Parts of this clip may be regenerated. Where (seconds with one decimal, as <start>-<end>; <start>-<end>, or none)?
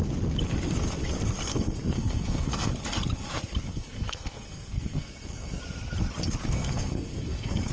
1.5-2.7; 3.7-5.6; 6.5-7.7